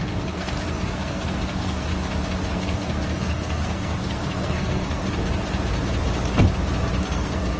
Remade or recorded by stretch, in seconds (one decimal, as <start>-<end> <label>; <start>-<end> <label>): 0.0-1.9 remade; 1.9-2.5 recorded; 2.5-5.0 remade; 5.0-7.0 recorded; 7.0-7.6 remade